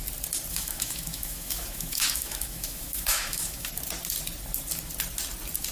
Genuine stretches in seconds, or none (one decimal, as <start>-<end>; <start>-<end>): 0.0-0.5; 3.7-5.7